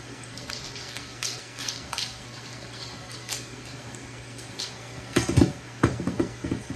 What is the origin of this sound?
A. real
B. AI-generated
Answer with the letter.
B